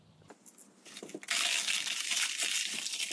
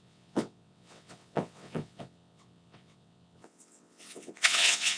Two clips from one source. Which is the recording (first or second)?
first